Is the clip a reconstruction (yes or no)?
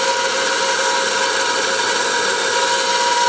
no